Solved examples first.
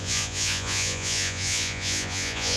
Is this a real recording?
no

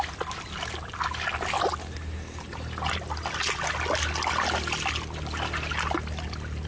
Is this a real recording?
yes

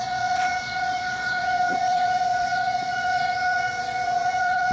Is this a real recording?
no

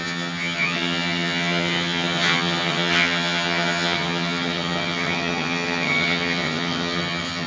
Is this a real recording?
no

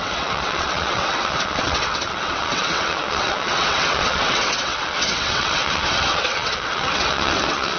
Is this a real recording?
no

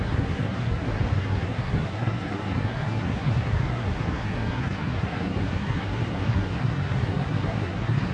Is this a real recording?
no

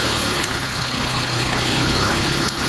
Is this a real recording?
no